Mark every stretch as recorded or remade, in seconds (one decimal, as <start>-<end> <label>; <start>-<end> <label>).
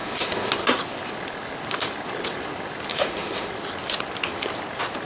0.0-0.5 remade; 0.5-2.9 recorded; 2.9-3.5 remade; 3.5-5.1 recorded